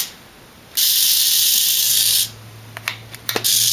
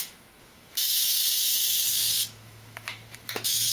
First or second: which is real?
first